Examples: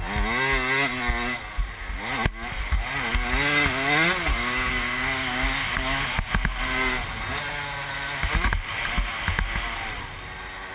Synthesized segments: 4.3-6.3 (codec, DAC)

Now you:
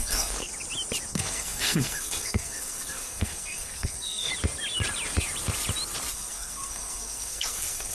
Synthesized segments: 0.0-0.5 (codec, SNAC); 1.1-4.3; 6.1-7.9

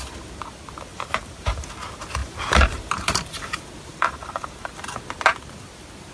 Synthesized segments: 0.9-1.7 (vocoder, BigVGAN v2); 2.2-2.9; 3.9-4.7

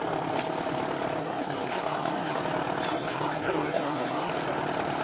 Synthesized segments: 1.2-2.4 (codec, SNAC); 2.9-4.3

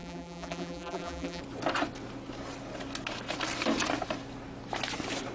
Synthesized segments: 0.0-1.4 (vocoder, BigVGAN v2)